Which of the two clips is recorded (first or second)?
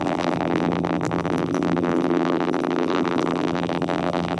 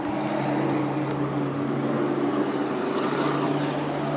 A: second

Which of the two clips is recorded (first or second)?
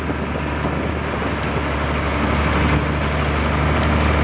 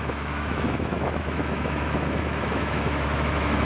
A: first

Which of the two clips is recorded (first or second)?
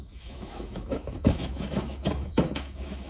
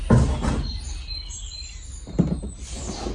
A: second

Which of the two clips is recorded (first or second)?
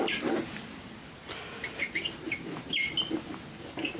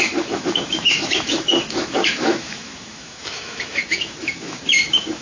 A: first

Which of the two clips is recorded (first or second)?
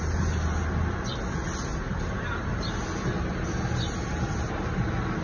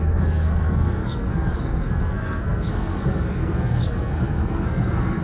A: first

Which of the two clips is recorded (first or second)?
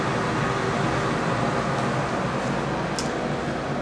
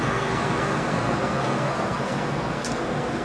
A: first